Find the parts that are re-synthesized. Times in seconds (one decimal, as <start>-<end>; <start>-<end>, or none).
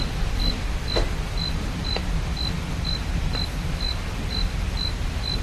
none